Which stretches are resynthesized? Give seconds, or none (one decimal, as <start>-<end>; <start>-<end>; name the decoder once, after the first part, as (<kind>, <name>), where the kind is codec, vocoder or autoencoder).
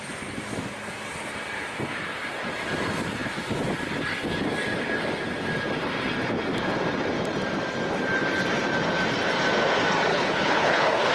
10.1-11.1 (codec, HILCodec)